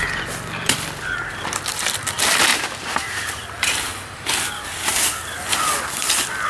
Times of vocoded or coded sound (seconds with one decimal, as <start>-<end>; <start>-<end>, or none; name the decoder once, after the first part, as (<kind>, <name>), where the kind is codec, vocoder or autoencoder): 2.5-3.3 (vocoder, BigVGAN v2)